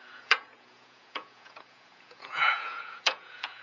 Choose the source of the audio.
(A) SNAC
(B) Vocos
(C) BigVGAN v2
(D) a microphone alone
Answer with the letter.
B